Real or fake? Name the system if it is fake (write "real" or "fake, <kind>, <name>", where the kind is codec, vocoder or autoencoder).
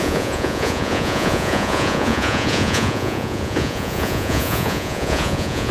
fake, vocoder, Vocos